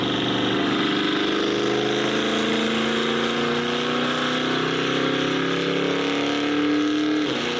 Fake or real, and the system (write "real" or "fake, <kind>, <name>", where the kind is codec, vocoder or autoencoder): real